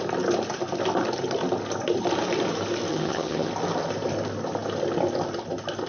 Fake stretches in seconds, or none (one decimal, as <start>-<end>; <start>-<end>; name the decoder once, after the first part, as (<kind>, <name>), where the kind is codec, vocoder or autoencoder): 2.9-3.5 (vocoder, HiFi-GAN)